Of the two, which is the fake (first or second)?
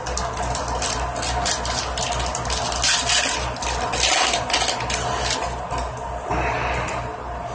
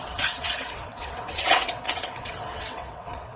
second